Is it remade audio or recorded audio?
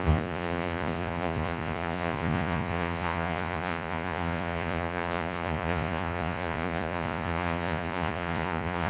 remade